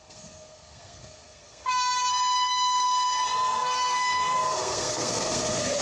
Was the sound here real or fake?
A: fake